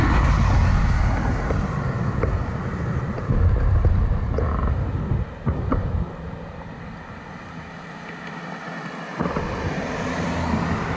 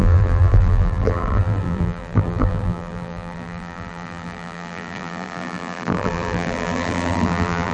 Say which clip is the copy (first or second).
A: second